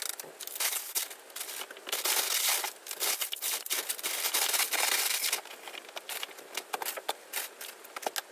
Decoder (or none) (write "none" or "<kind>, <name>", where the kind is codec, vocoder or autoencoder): none